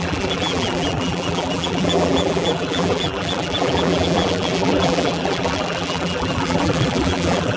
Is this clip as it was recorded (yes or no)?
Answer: no